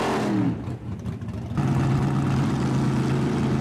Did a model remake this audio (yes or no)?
no